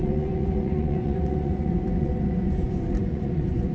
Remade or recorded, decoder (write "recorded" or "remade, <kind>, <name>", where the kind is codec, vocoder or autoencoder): remade, vocoder, Vocos